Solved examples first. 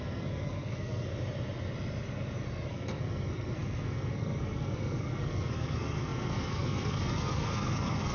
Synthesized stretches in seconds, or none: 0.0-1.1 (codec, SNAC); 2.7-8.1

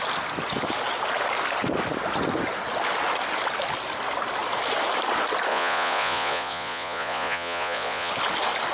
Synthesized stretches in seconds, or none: 5.5-8.1 (vocoder, Vocos)

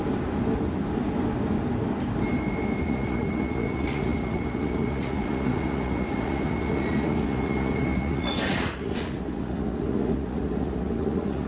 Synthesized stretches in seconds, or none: 2.8-11.5 (vocoder, Vocos)

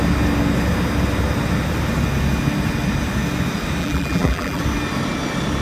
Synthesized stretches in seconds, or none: 3.8-4.6 (vocoder, BigVGAN v2)